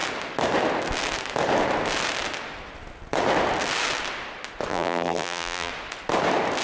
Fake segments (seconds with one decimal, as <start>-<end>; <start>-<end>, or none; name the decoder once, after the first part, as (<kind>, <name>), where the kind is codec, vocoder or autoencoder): 4.7-5.7 (vocoder, BigVGAN v2)